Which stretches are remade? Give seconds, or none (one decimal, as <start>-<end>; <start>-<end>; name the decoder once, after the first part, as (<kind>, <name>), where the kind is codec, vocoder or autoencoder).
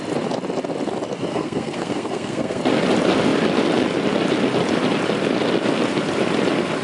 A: 1.3-2.6 (codec, SNAC)